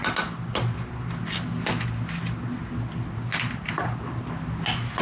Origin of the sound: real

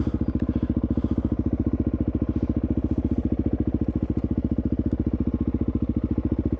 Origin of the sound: real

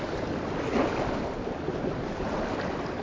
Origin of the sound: real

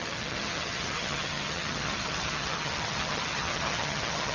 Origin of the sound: fake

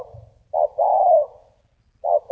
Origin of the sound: real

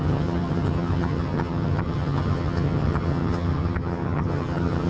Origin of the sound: fake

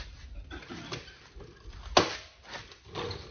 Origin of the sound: real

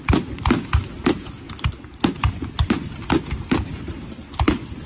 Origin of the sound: real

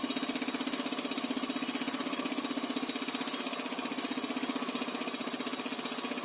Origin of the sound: real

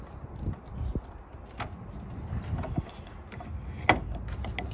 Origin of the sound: real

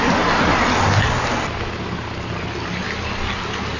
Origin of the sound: real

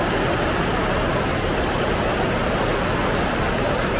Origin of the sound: real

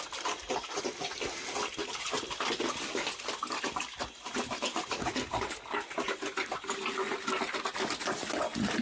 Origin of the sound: real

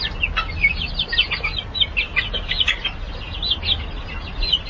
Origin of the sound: real